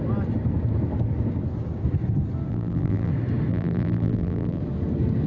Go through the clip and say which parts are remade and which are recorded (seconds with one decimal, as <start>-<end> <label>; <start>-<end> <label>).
0.0-2.5 recorded; 2.5-3.1 remade; 3.1-3.5 recorded; 3.5-4.6 remade; 4.6-5.3 recorded